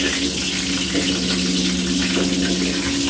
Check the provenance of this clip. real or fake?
real